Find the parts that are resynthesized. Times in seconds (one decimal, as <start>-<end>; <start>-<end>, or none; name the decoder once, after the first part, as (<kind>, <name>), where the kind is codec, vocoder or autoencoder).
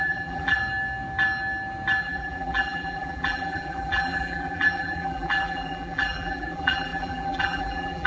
0.0-0.6 (vocoder, BigVGAN v2); 2.0-8.1